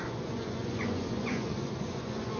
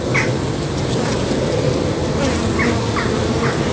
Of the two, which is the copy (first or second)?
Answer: first